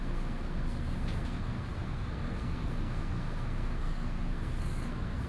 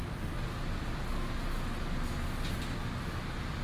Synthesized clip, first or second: first